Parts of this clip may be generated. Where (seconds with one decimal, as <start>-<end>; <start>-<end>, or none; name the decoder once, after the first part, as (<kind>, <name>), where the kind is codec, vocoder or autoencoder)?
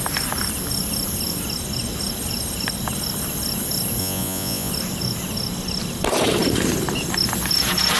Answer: 4.0-4.7 (vocoder, Vocos)